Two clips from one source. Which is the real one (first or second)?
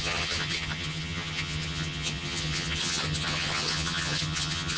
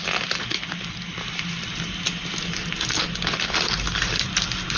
second